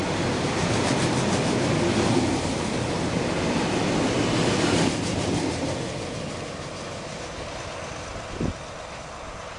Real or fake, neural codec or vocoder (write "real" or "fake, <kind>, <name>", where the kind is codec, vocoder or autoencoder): real